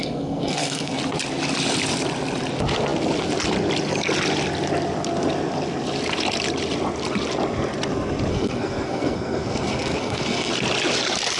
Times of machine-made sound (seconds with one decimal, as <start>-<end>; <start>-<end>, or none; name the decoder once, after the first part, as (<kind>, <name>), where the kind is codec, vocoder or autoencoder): 0.0-1.0 (codec, SNAC); 8.3-10.5